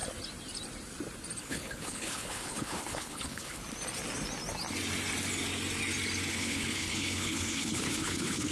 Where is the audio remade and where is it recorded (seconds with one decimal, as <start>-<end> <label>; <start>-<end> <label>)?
0.0-1.4 recorded; 1.4-3.6 remade; 3.6-6.3 recorded; 6.3-8.5 remade